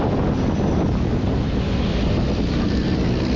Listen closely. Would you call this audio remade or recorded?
recorded